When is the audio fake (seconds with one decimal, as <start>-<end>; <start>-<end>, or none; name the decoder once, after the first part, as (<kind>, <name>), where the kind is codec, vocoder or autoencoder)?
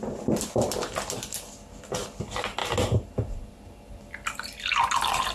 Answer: none